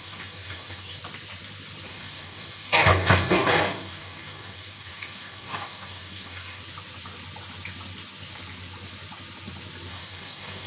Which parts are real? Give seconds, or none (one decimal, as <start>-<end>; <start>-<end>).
1.0-1.9; 6.6-9.9